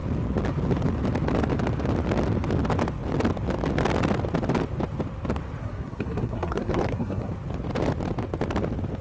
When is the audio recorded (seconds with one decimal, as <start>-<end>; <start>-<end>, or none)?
0.0-5.6; 7.3-9.0